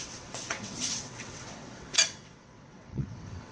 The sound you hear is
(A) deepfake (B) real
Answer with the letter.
A